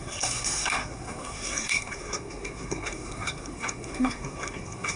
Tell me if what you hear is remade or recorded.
remade